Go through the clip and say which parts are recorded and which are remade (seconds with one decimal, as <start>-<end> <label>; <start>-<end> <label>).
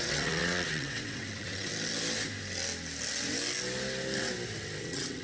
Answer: 0.0-1.7 remade; 1.7-4.8 recorded; 4.8-5.2 remade